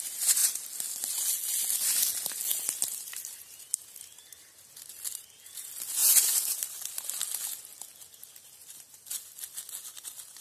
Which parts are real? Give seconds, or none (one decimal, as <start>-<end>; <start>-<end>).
0.0-6.0; 6.9-10.4